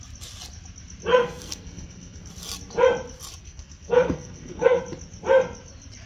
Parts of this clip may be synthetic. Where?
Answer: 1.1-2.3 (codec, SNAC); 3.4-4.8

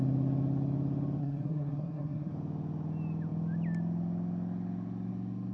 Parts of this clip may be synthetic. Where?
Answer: 1.2-2.3 (codec, SNAC)

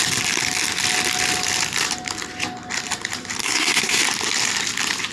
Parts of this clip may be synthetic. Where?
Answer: 3.4-4.0 (codec, SNAC)